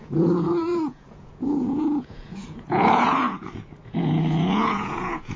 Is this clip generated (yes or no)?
yes